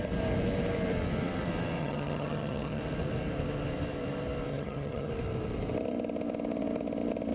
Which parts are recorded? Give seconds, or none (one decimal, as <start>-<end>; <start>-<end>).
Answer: 0.0-1.8; 2.8-4.5; 5.1-7.3